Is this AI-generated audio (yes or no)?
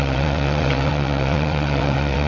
yes